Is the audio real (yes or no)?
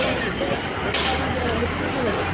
yes